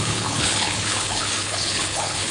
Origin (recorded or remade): remade